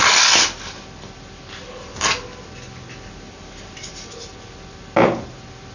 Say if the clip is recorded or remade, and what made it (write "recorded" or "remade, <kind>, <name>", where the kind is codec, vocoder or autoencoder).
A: recorded